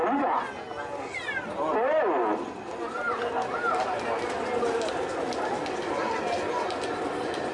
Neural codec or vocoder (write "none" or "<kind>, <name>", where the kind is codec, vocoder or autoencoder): none